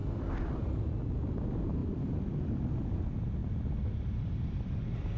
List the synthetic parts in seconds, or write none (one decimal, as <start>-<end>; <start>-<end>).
0.0-0.9; 1.8-2.7; 3.4-4.8